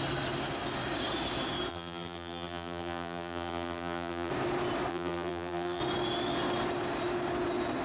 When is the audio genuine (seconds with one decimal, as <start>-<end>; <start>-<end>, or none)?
0.0-1.7; 4.3-4.9; 5.8-7.8